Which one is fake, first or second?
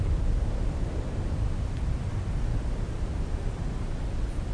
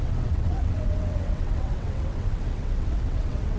second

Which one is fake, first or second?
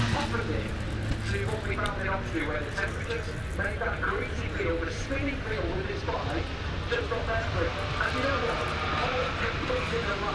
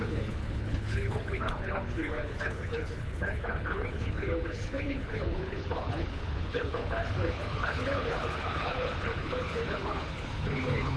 second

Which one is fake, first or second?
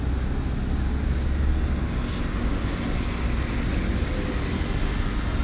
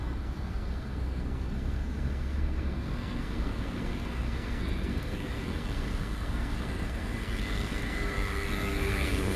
second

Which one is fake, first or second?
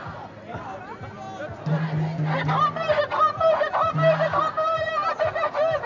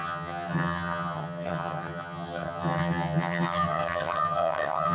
second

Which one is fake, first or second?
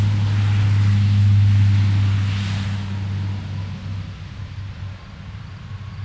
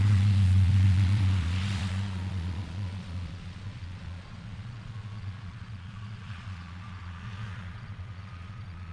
second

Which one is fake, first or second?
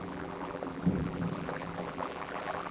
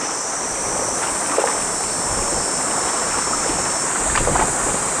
first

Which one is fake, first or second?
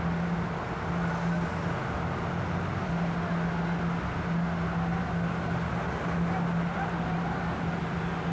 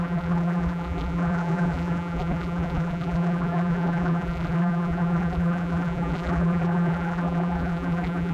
second